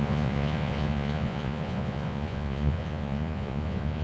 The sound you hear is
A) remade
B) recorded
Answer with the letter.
A